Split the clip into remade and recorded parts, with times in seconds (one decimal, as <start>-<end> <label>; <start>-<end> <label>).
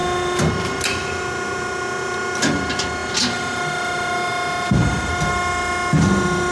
0.0-6.5 recorded